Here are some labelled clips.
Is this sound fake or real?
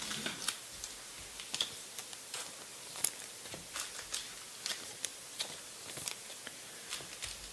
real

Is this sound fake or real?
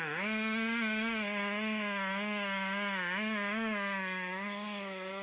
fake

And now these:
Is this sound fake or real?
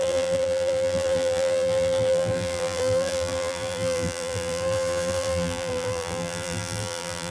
fake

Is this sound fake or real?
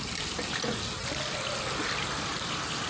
real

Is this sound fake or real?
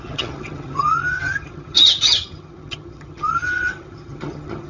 fake